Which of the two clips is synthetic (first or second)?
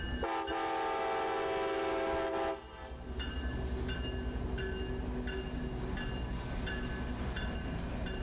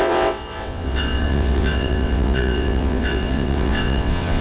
second